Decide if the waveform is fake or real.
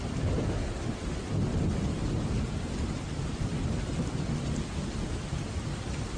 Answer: real